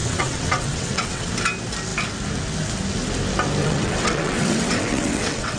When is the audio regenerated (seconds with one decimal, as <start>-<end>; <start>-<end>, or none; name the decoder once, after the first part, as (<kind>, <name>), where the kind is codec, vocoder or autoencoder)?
0.0-1.3 (vocoder, WaveNeXt); 3.6-5.6